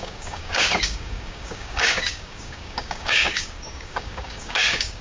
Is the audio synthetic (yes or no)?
yes